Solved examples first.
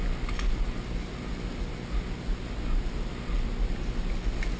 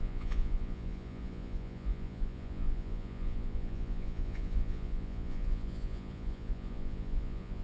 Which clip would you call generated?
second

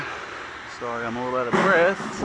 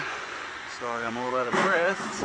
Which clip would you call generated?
second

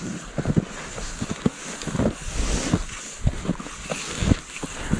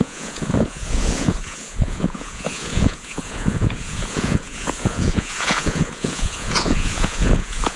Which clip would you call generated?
second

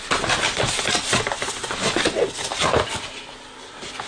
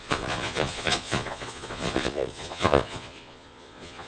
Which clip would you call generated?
second